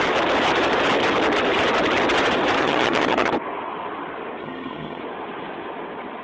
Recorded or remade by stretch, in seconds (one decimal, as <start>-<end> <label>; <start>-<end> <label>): 0.0-2.6 recorded; 2.6-3.3 remade; 3.3-4.4 recorded; 4.4-5.0 remade; 5.0-6.2 recorded